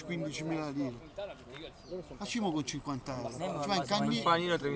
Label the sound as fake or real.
real